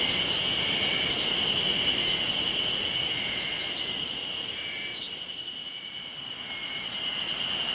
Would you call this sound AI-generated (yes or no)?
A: no